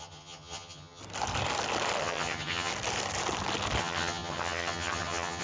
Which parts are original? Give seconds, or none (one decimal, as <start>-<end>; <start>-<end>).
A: 1.0-2.0; 2.7-3.8